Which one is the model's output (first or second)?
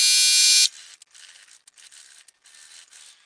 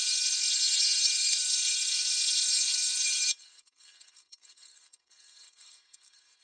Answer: second